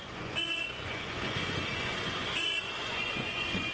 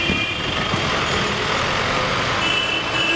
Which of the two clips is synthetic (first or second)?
first